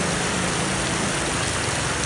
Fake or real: real